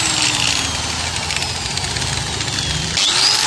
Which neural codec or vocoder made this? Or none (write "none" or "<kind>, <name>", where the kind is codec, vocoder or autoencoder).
none